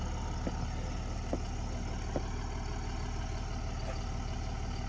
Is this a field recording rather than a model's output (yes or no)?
yes